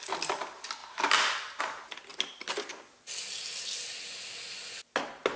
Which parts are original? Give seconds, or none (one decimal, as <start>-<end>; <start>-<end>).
0.0-0.8; 1.6-5.4